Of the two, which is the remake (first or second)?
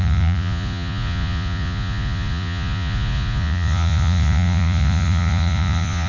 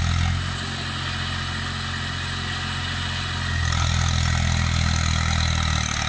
first